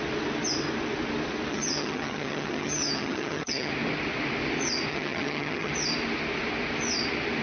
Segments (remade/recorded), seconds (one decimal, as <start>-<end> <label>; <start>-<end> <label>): 0.0-1.5 recorded; 1.5-3.7 remade; 3.7-4.9 recorded; 4.9-5.7 remade; 5.7-7.4 recorded